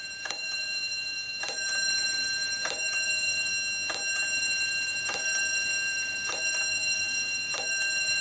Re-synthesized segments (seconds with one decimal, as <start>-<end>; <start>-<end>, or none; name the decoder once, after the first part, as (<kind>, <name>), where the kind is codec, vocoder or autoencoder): 0.0-3.5 (vocoder, BigVGAN v2); 4.1-8.2